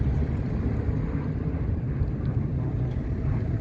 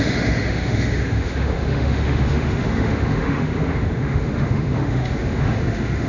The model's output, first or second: second